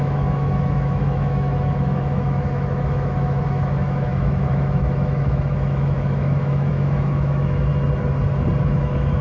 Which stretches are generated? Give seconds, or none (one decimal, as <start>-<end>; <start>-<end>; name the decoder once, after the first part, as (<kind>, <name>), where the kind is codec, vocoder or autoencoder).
0.0-7.7 (autoencoder, DAC-VAE); 8.6-9.2